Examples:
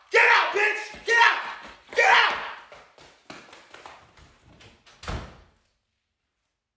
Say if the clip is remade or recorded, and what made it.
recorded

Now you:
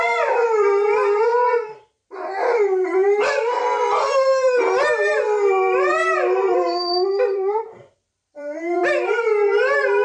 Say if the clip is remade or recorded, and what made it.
remade, vocoder, BigVGAN v2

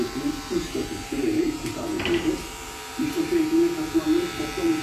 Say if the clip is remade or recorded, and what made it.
remade, vocoder, BigVGAN v2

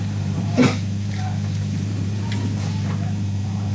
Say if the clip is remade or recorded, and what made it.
remade, vocoder, BigVGAN v2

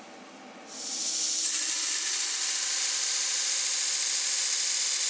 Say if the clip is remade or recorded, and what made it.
recorded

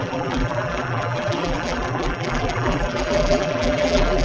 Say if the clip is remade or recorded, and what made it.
remade, vocoder, BigVGAN v2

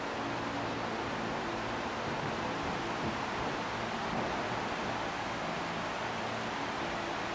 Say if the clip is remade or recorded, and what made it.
recorded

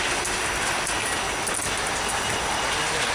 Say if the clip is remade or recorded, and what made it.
recorded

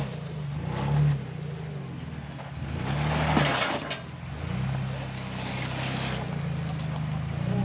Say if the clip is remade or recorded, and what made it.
recorded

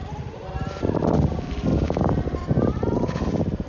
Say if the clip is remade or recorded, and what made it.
recorded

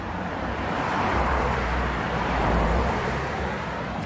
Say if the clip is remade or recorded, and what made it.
remade, vocoder, BigVGAN v2